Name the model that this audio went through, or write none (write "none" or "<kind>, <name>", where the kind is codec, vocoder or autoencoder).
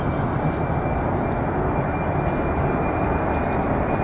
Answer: none